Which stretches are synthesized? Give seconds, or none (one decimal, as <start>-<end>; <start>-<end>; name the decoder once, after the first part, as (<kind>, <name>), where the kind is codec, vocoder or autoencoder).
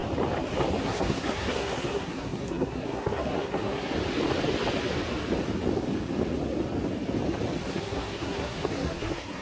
0.8-3.9 (codec, SNAC); 7.7-9.4